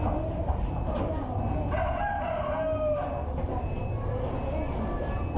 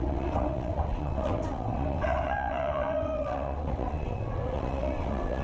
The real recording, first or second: first